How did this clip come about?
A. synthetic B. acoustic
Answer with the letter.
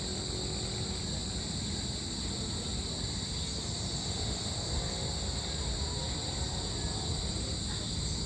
B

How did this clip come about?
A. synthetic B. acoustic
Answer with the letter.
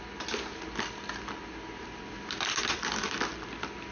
B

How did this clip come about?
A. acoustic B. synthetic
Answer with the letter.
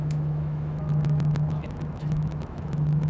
B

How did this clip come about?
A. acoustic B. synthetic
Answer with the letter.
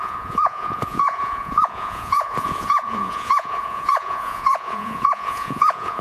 B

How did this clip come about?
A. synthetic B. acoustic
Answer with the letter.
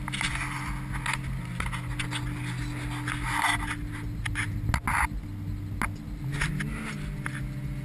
B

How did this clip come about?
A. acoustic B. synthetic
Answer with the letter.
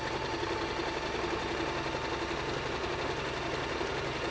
A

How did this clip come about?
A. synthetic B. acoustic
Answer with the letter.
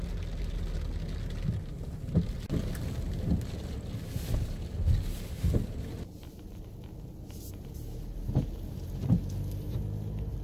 B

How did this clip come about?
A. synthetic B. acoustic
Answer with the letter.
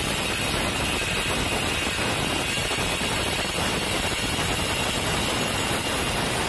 B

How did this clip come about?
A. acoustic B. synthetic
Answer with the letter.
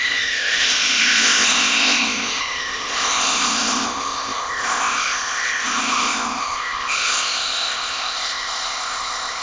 B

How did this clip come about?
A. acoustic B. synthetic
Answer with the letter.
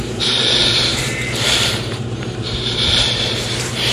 B